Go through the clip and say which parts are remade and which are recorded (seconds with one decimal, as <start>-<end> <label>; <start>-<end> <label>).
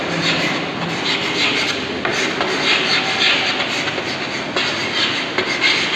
0.0-6.0 recorded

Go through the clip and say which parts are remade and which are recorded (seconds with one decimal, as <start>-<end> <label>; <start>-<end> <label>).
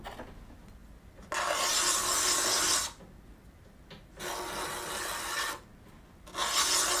0.0-7.0 recorded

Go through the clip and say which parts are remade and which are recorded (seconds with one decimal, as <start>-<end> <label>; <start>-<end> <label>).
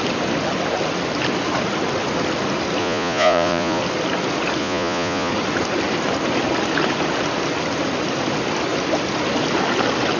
0.0-2.8 recorded; 2.8-3.8 remade; 3.8-4.6 recorded; 4.6-5.3 remade; 5.3-10.2 recorded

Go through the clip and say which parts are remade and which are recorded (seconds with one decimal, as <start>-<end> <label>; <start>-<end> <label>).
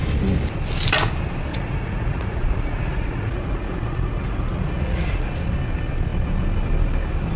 0.0-1.5 recorded; 1.5-5.3 remade; 5.3-7.4 recorded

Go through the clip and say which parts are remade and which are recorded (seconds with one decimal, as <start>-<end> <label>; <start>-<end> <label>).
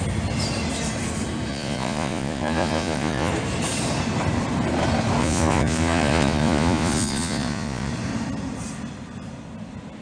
0.0-1.5 recorded; 1.5-3.3 remade; 3.3-5.2 recorded; 5.2-7.9 remade; 7.9-10.0 recorded